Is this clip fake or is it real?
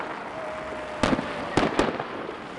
real